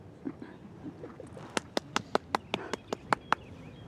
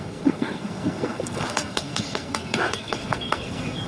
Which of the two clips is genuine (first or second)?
first